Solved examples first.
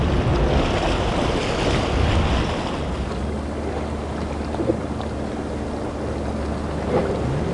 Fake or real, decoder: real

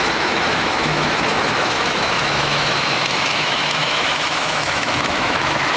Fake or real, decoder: fake, autoencoder, DAC-VAE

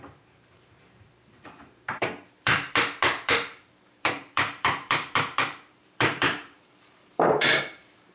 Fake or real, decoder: fake, vocoder, BigVGAN v2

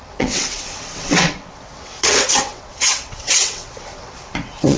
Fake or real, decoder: fake, vocoder, WaveNeXt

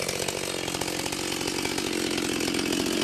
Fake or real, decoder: real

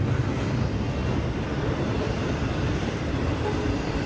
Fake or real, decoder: real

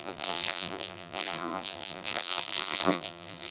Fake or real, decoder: fake, vocoder, BigVGAN v2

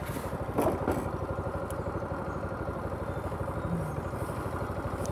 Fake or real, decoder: real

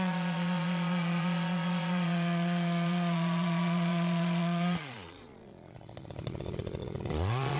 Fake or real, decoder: fake, vocoder, Vocos